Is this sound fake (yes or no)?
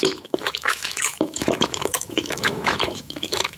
yes